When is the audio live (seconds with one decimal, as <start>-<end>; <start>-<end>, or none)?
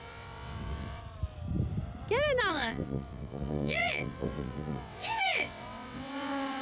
1.0-2.5